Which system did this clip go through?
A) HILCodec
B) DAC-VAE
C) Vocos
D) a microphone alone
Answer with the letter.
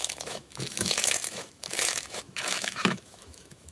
B